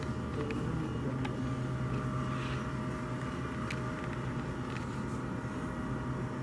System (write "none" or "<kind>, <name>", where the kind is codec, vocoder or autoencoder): none